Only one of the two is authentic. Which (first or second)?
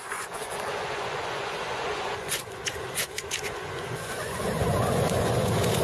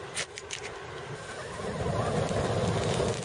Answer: second